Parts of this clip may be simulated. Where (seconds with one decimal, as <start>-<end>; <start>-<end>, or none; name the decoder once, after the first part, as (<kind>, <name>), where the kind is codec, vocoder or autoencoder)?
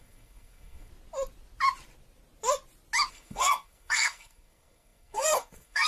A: 0.0-0.9 (codec, SNAC); 3.1-5.9